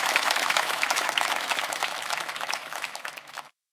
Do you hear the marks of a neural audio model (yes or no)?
yes